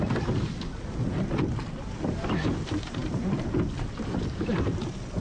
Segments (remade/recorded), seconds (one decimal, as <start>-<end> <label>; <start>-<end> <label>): 0.0-5.2 recorded